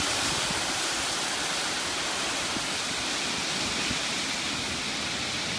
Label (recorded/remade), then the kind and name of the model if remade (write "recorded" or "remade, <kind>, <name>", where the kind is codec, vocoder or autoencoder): recorded